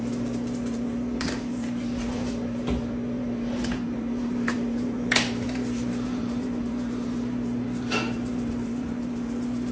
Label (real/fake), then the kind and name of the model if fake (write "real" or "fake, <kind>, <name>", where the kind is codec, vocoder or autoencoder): fake, vocoder, BigVGAN v2